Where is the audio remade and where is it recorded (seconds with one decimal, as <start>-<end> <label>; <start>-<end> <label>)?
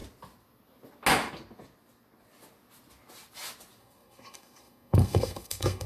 0.0-3.8 recorded; 3.8-5.9 remade